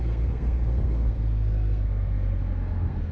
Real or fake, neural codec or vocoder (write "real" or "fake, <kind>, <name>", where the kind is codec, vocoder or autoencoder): fake, codec, SNAC